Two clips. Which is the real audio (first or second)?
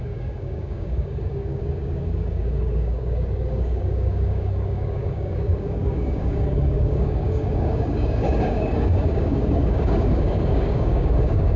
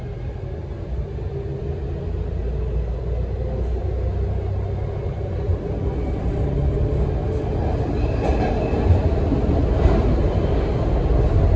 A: second